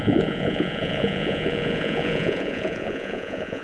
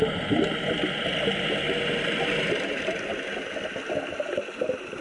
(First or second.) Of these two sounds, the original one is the second